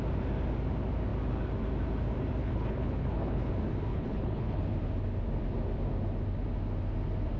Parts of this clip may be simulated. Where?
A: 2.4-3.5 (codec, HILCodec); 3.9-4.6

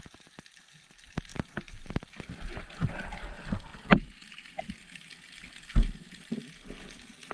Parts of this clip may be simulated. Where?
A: none

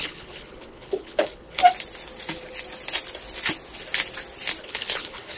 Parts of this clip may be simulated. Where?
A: 0.0-1.6 (codec, HILCodec); 4.6-5.4

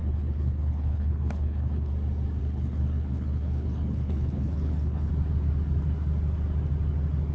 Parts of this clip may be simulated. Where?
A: 0.0-1.9 (codec, HILCodec); 2.4-5.1

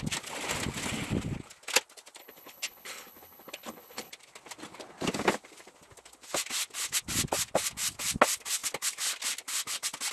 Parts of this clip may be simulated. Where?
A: 2.2-4.1 (codec, HILCodec)